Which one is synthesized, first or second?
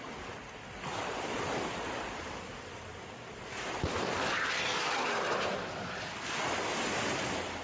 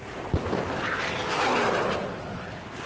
first